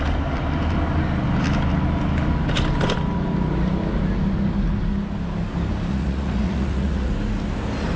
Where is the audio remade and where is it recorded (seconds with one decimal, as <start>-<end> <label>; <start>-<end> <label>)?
0.0-5.9 recorded; 5.9-7.1 remade; 7.1-8.0 recorded